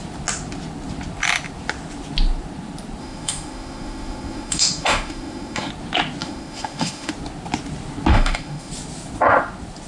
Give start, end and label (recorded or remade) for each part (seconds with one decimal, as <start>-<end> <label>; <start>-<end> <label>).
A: 0.0-3.0 recorded; 3.0-5.7 remade; 5.7-6.2 recorded; 6.2-7.1 remade; 7.1-8.1 recorded; 8.1-8.7 remade; 8.7-9.9 recorded